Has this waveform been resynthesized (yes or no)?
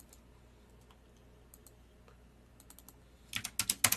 no